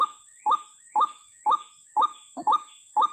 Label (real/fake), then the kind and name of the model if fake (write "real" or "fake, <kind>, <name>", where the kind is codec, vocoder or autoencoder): fake, autoencoder, DAC-VAE